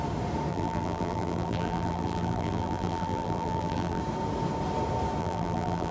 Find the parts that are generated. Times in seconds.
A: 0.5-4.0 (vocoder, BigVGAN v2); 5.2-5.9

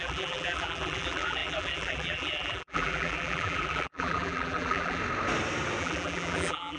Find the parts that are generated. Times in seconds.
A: 0.0-5.0 (vocoder, BigVGAN v2); 5.8-6.8

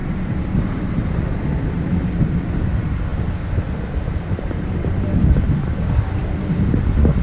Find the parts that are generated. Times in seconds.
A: 0.0-2.6 (vocoder, BigVGAN v2); 3.1-3.8